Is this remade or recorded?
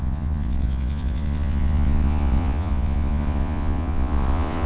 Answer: remade